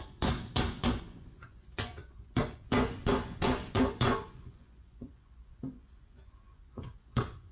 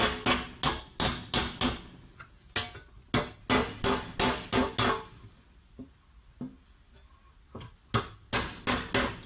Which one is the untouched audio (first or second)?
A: second